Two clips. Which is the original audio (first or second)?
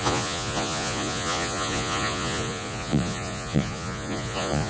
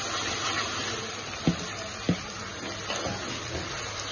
second